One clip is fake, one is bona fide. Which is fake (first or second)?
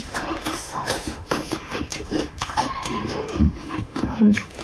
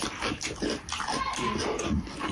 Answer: first